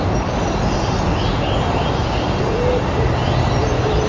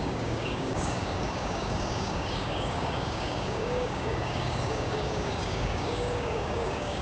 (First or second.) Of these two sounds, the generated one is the second